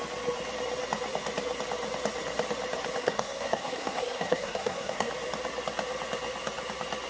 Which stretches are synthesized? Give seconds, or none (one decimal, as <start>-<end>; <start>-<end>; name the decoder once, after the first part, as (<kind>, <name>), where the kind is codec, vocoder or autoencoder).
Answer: 3.0-5.1 (codec, SNAC)